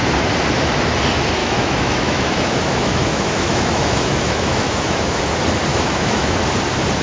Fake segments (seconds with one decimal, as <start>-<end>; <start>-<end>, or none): 1.4-5.2; 5.7-6.3